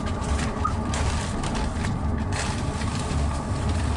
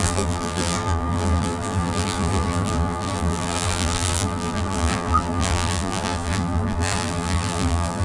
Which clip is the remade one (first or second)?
second